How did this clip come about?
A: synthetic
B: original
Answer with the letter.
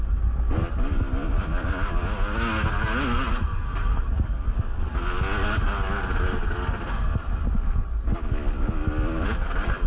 B